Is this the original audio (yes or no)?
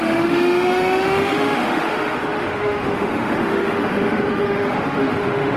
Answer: no